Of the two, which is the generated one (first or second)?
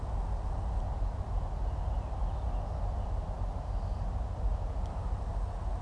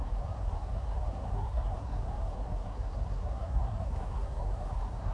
second